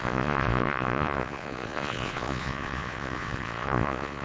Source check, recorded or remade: remade